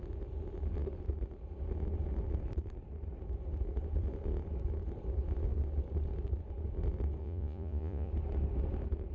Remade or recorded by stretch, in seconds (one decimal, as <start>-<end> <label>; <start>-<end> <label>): 0.0-7.2 recorded; 7.2-8.1 remade; 8.1-9.1 recorded